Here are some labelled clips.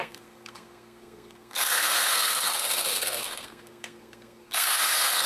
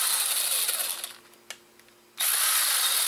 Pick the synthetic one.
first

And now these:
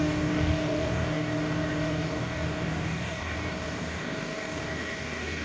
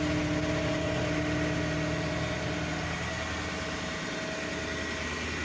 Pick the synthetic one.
first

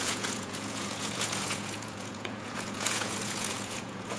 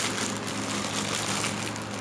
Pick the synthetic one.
first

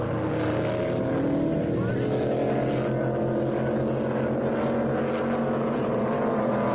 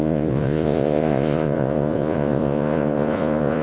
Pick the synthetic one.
second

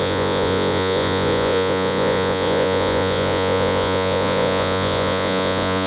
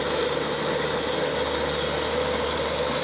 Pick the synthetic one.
first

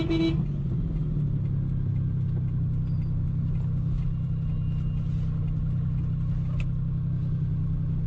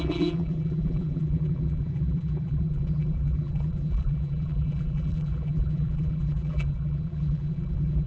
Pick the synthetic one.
second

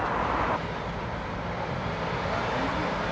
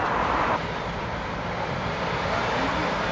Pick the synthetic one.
second